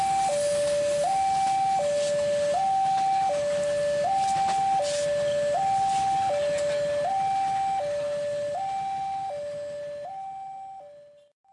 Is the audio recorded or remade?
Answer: recorded